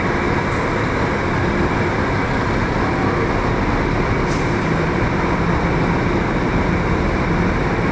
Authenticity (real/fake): real